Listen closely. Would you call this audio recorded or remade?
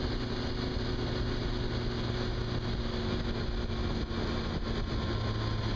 recorded